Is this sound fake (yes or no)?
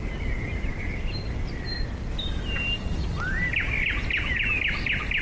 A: no